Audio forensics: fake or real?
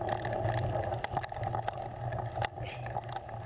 real